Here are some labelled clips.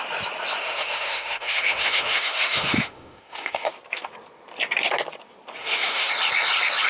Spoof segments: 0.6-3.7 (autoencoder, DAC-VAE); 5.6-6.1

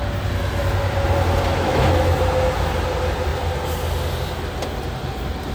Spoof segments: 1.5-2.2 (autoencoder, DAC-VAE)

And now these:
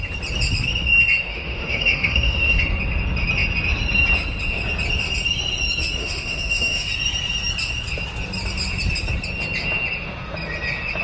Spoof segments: 1.3-2.6 (autoencoder, DAC-VAE); 6.0-6.9

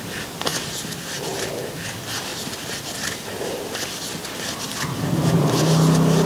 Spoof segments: none